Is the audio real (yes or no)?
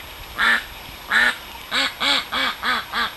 yes